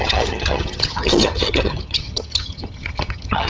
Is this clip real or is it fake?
fake